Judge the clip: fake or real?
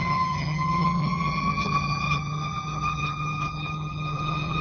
fake